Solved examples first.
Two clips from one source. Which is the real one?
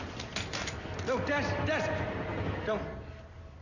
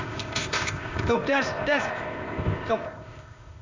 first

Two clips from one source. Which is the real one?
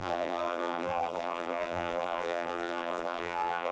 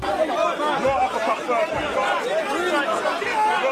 second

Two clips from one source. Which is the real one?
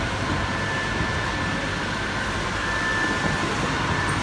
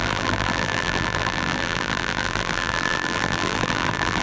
first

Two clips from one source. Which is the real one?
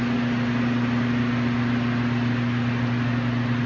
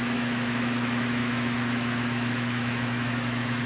first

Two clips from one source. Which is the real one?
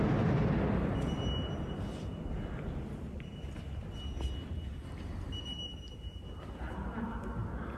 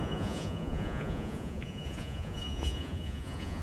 first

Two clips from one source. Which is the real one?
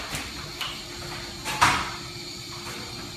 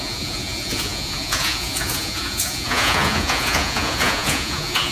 first